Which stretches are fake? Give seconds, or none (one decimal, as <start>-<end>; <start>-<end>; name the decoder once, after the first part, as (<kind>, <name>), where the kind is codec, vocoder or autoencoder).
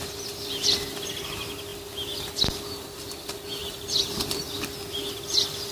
3.6-4.5 (vocoder, BigVGAN v2)